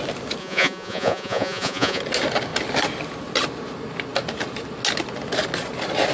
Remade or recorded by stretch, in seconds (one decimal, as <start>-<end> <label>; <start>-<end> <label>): 0.0-0.4 recorded; 0.4-2.0 remade; 2.0-6.1 recorded